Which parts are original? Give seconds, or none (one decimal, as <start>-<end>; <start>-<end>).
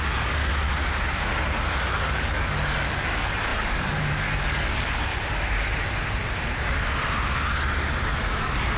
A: 0.5-1.9; 5.1-8.4